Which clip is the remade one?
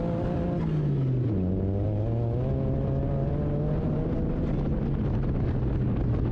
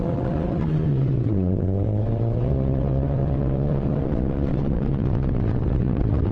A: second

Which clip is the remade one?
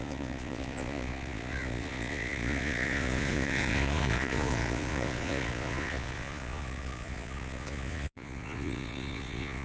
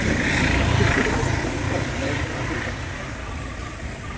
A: first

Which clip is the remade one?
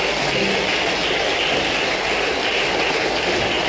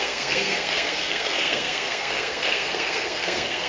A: second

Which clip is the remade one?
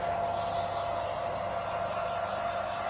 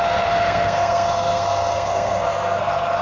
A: second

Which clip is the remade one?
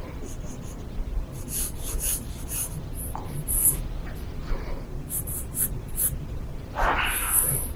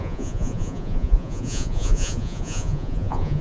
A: second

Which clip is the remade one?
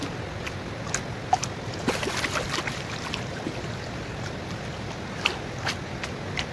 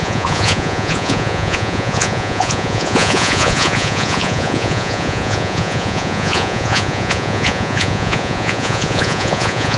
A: second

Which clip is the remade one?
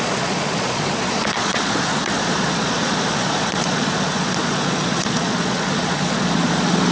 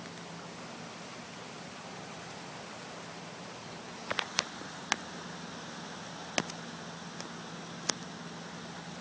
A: first